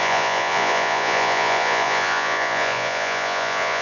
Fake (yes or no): yes